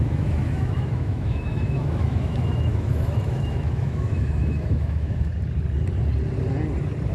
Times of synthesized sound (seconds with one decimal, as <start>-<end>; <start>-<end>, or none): 0.0-5.3